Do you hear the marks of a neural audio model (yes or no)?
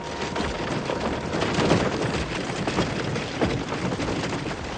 no